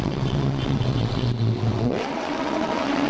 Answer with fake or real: fake